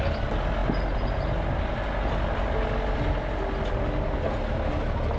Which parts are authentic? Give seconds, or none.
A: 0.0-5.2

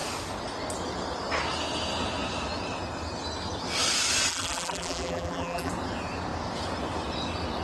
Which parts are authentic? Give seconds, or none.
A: 0.0-4.3; 5.7-7.6

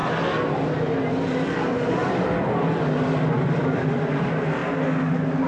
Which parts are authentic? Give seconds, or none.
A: 0.0-1.1; 4.6-5.5

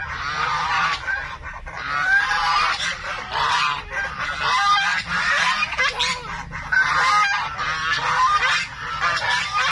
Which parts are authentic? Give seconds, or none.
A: 4.2-4.9; 5.8-9.7

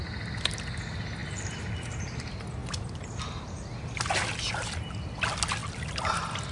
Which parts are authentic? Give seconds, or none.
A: 0.0-1.2; 2.2-6.5

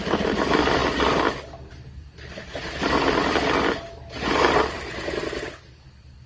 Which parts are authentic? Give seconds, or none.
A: 0.0-6.3

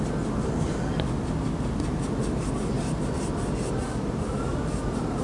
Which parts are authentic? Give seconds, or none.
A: 0.0-4.5